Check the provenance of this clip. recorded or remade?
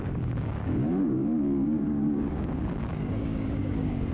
remade